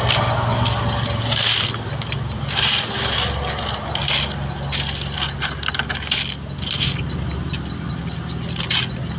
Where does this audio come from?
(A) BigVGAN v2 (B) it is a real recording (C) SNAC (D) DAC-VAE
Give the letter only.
B